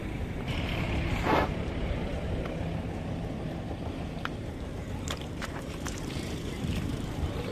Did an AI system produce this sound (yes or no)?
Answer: yes